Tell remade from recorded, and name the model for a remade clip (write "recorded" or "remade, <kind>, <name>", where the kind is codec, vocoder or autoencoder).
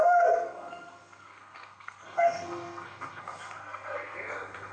remade, codec, SNAC